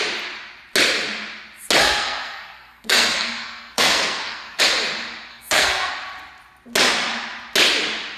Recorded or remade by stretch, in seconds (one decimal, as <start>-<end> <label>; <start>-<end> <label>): 0.0-1.8 recorded; 1.8-4.6 remade; 4.6-5.3 recorded; 5.3-5.9 remade; 5.9-8.2 recorded